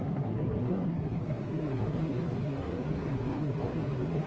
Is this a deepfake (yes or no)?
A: yes